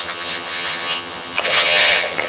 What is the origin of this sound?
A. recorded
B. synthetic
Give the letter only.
B